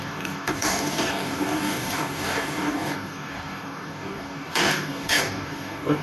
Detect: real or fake fake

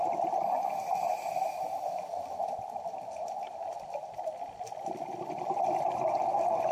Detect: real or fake real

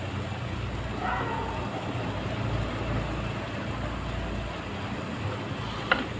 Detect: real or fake real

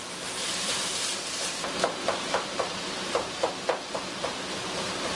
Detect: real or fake fake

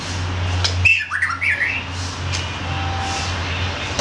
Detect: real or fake real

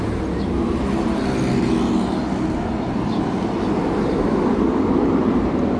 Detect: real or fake real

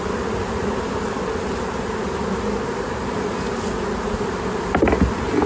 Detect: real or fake real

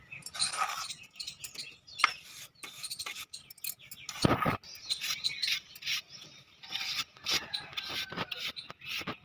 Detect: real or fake real